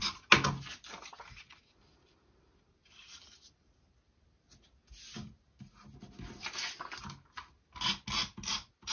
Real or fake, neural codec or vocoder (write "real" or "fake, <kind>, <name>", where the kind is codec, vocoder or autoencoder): real